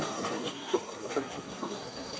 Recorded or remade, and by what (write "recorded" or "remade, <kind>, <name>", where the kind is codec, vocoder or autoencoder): remade, codec, SNAC